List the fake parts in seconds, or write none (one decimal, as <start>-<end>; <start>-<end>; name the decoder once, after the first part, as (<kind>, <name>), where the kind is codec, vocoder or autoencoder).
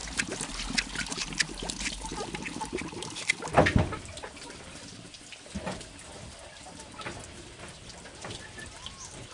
none